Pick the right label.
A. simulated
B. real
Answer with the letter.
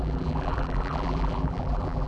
A